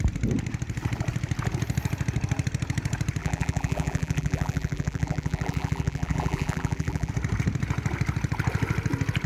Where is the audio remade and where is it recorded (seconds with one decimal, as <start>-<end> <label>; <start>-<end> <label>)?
0.0-3.2 recorded; 3.2-7.1 remade; 7.1-9.3 recorded